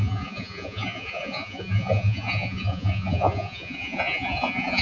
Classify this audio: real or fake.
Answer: fake